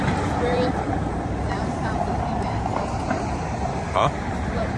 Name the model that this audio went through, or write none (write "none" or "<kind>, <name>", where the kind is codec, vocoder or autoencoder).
vocoder, BigVGAN v2